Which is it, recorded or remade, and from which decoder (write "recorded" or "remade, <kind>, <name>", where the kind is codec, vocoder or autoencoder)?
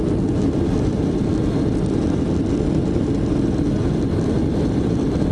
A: recorded